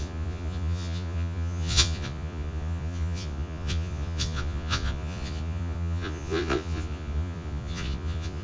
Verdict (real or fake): fake